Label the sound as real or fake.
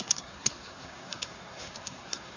fake